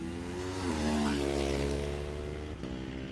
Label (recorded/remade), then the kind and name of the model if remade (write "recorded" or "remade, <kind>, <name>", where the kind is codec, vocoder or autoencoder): recorded